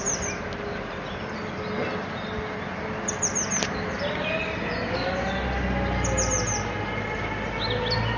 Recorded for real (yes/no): yes